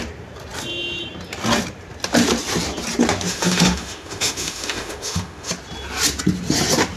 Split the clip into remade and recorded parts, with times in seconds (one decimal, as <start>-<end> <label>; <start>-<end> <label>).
0.0-3.3 recorded; 3.3-5.5 remade; 5.5-7.0 recorded